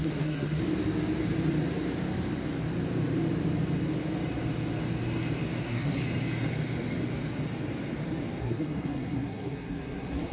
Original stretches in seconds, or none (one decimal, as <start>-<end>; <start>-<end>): 0.6-5.6; 6.0-8.4